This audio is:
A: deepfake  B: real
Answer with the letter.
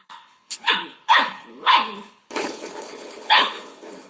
A